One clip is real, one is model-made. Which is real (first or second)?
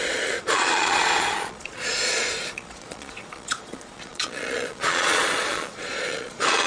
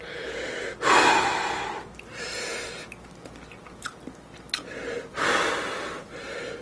second